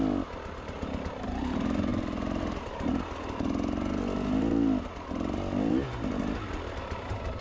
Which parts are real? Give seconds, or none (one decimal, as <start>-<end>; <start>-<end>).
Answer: 0.0-7.4